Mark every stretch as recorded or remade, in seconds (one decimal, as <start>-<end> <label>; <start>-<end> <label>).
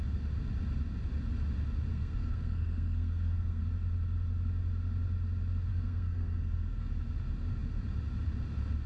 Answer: 0.0-1.9 recorded; 1.9-3.6 remade; 3.6-5.7 recorded; 5.7-6.9 remade; 6.9-8.9 recorded